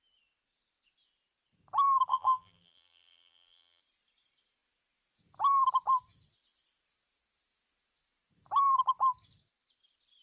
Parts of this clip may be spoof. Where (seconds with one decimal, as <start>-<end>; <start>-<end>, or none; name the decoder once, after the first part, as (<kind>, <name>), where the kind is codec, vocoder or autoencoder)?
2.1-3.8 (vocoder, BigVGAN v2)